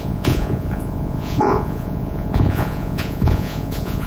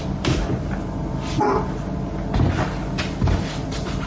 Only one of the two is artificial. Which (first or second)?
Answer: first